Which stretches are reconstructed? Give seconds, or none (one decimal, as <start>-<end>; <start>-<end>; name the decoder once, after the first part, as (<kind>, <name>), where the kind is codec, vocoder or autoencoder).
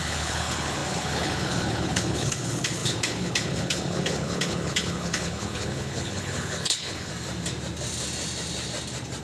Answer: 0.0-7.1 (codec, HILCodec)